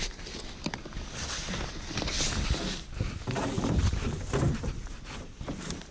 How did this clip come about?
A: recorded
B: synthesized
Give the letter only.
A